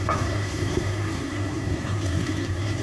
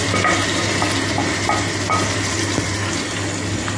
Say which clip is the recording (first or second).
second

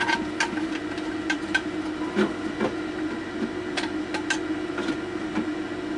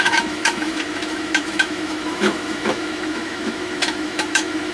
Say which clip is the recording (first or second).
first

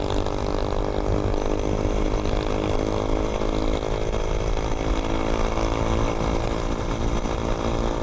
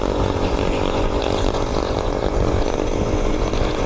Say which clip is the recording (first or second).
first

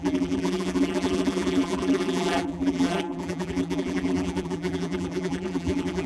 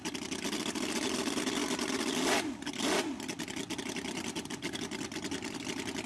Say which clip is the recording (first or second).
second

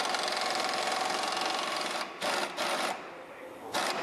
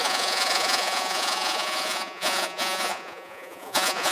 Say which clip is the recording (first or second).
first